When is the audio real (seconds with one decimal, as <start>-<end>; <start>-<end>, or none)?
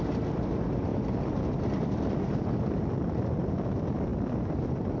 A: 0.0-5.0